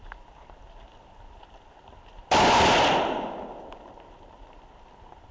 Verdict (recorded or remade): recorded